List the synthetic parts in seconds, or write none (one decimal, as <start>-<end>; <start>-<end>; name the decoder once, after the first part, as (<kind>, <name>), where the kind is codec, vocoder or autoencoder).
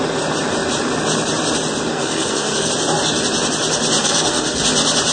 1.9-2.7 (codec, SNAC); 4.0-4.6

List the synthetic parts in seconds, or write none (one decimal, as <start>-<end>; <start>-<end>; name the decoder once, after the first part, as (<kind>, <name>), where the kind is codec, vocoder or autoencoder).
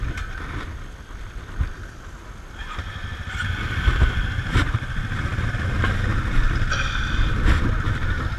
none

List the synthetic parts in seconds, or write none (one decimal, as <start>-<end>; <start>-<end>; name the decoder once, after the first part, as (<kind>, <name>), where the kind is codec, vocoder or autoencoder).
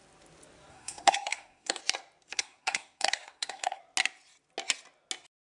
0.7-1.8 (codec, SNAC); 2.3-3.8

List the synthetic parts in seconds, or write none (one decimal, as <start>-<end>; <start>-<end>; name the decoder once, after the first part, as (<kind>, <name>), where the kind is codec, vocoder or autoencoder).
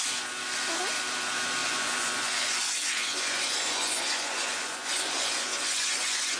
1.6-2.5 (vocoder, Vocos); 3.0-6.4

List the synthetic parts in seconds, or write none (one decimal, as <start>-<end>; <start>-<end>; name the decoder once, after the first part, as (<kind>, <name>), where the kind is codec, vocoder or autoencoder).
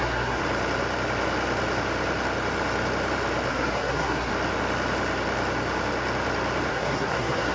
0.0-0.4 (codec, SNAC); 3.5-4.3; 6.7-7.5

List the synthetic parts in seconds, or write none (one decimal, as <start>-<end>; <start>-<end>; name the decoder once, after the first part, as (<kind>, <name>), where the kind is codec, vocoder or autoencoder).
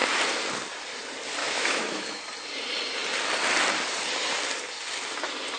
1.4-2.2 (autoencoder, DAC-VAE)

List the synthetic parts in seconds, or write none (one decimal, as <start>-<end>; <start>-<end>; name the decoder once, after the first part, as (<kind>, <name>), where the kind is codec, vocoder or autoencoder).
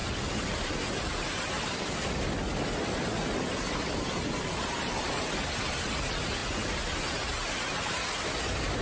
0.0-4.8 (vocoder, BigVGAN v2)